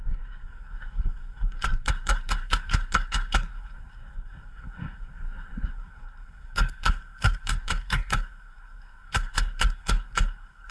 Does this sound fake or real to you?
fake